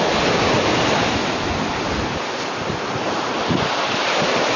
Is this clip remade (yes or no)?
no